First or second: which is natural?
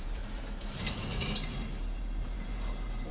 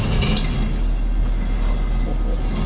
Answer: second